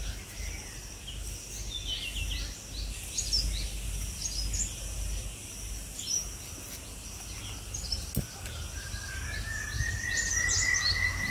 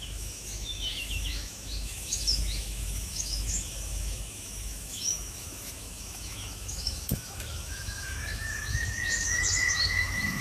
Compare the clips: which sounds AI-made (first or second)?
second